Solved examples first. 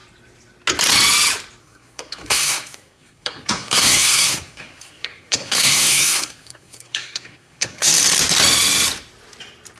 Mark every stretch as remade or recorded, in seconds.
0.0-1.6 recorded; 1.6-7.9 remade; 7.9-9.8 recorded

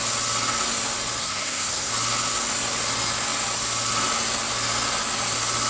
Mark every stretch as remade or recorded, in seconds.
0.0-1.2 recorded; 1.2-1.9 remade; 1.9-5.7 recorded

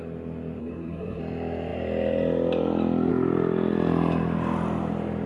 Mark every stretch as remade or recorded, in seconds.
0.0-0.6 recorded; 0.6-1.2 remade; 1.2-5.3 recorded

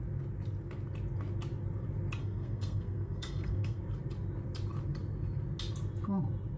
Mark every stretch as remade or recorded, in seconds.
0.0-2.2 recorded; 2.2-3.8 remade; 3.8-6.6 recorded